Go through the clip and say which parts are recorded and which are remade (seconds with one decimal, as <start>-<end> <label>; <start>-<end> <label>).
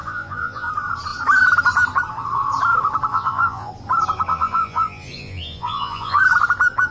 0.0-0.7 remade; 0.7-3.1 recorded; 3.1-3.7 remade; 3.7-4.3 recorded; 4.3-6.2 remade; 6.2-6.9 recorded